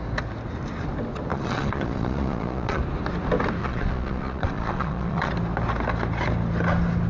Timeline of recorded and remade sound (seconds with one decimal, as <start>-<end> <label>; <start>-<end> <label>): 0.0-1.3 recorded; 1.3-2.8 remade; 2.8-3.6 recorded; 3.6-5.3 remade; 5.3-7.1 recorded